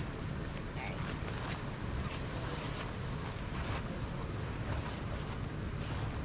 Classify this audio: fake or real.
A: real